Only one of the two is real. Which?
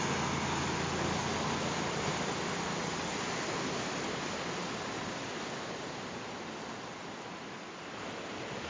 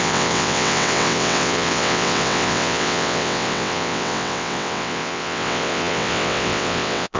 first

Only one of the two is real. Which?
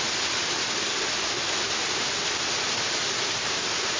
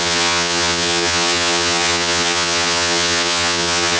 first